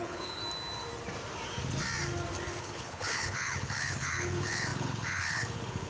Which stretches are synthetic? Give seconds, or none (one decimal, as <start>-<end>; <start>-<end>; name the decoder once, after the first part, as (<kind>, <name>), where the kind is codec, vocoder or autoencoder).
0.0-0.4 (codec, HILCodec); 2.6-5.9